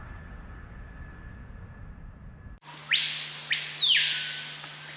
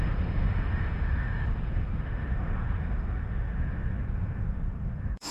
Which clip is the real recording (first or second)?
first